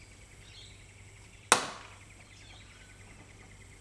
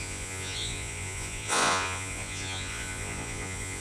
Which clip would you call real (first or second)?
first